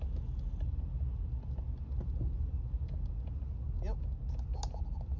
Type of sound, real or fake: real